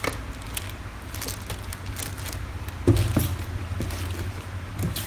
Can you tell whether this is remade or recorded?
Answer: recorded